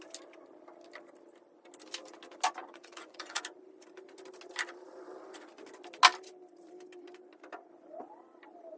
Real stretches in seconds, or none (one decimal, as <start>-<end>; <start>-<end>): 0.0-2.6; 3.4-8.8